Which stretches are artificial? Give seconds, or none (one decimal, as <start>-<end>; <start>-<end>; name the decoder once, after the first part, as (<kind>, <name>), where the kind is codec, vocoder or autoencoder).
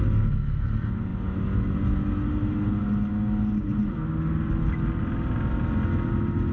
none